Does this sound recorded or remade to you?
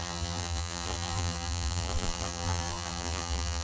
remade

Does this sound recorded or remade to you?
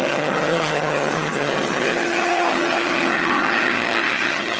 remade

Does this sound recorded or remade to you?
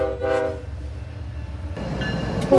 recorded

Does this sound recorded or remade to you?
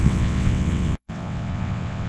remade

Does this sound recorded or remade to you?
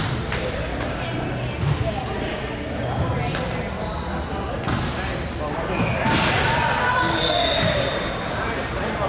recorded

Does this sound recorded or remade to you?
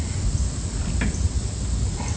recorded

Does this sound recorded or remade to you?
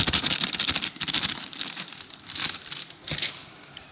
recorded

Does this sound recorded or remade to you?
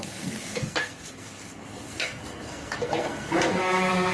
remade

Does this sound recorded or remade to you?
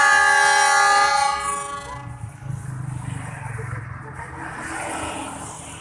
recorded